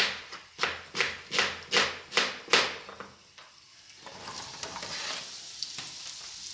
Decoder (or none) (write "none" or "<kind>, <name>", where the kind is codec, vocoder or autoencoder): none